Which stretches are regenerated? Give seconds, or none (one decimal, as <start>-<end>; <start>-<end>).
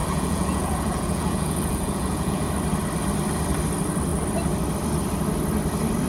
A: 0.0-2.5